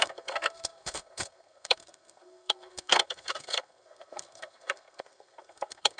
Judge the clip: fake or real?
fake